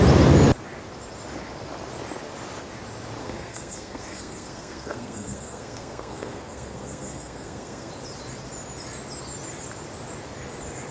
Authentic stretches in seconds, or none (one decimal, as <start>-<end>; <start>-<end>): 0.0-3.2; 7.9-10.9

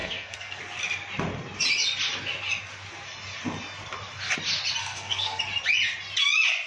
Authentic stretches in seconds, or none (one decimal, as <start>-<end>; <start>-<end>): 0.6-4.8; 5.4-6.7

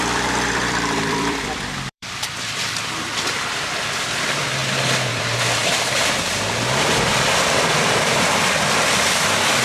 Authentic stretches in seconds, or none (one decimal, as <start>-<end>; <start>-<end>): 4.6-5.1

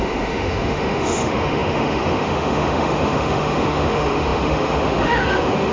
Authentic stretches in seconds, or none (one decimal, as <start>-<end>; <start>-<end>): none